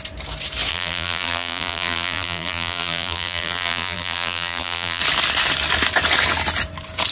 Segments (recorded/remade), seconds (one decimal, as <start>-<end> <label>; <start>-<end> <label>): 0.0-0.7 recorded; 0.7-5.0 remade; 5.0-7.1 recorded